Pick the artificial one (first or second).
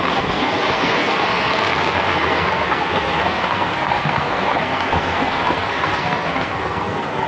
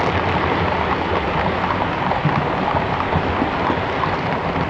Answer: first